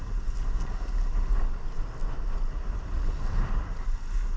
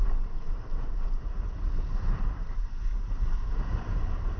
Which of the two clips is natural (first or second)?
first